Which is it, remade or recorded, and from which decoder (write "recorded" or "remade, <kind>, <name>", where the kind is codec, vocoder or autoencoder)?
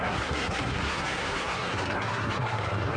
remade, codec, SNAC